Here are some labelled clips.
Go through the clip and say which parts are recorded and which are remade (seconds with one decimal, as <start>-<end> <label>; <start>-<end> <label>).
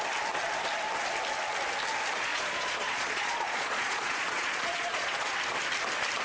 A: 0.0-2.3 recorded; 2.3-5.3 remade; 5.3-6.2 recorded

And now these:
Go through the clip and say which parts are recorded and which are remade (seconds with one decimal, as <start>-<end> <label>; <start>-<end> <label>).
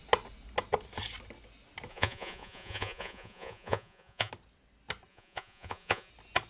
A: 0.0-1.9 recorded; 1.9-4.3 remade; 4.3-5.1 recorded; 5.1-6.1 remade; 6.1-6.5 recorded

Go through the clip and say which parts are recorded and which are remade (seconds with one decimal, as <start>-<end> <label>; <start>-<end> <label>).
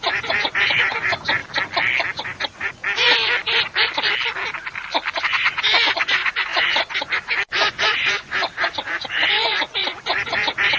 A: 0.0-1.4 remade; 1.4-2.2 recorded; 2.2-2.8 remade; 2.8-5.3 recorded; 5.3-10.8 remade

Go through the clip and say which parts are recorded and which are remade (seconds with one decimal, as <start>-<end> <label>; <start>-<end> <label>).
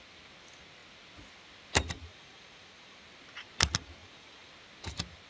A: 0.0-2.1 recorded; 2.1-3.0 remade; 3.0-4.0 recorded; 4.0-4.5 remade; 4.5-5.3 recorded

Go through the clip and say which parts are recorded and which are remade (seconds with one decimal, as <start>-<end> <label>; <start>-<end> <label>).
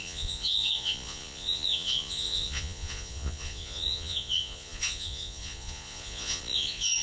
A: 0.0-7.0 remade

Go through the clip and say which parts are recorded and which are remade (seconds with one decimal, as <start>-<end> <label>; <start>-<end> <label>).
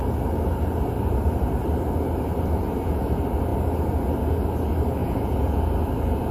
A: 0.0-5.0 recorded; 5.0-5.6 remade; 5.6-6.3 recorded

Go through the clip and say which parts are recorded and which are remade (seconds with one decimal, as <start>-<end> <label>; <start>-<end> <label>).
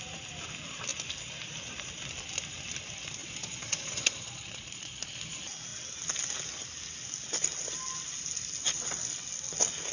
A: 0.0-3.2 recorded; 3.2-5.2 remade; 5.2-9.9 recorded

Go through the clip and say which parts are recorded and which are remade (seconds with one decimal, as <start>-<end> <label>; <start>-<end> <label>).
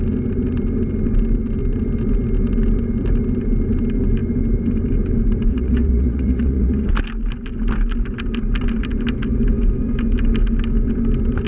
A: 0.0-5.5 recorded; 5.5-6.9 remade; 6.9-11.5 recorded